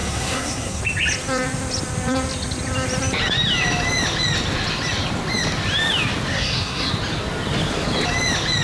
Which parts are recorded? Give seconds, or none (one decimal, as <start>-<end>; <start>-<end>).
0.8-6.3; 6.9-8.6